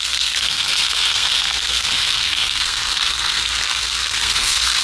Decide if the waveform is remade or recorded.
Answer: remade